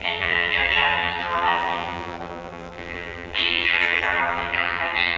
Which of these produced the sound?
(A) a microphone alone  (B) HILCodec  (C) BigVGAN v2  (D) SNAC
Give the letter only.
C